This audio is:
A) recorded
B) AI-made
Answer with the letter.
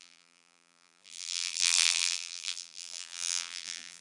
B